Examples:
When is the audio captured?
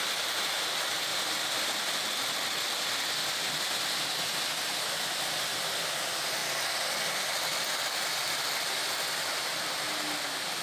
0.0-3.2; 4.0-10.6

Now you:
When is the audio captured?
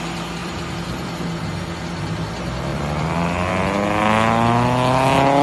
0.0-0.4; 1.2-2.7; 3.5-5.4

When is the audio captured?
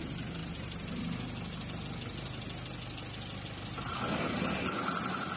0.0-5.4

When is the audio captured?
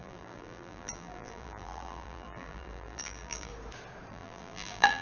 3.5-4.1